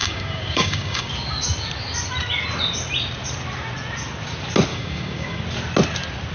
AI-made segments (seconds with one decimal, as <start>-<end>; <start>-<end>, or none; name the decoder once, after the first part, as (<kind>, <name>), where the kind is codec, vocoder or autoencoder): 0.0-1.1 (codec, DAC); 4.7-5.4